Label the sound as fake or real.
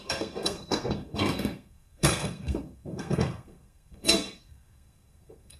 fake